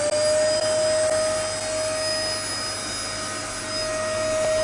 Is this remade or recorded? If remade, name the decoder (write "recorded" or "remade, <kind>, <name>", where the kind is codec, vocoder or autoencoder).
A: recorded